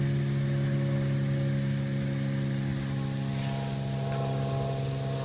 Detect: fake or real real